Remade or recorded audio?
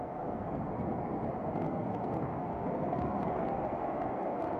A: remade